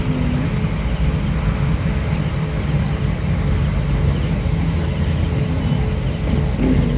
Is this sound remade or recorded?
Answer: recorded